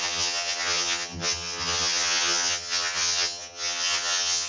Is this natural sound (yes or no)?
no